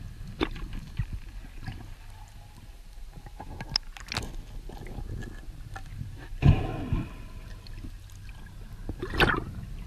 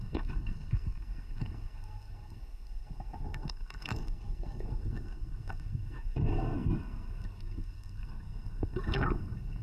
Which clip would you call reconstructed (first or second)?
second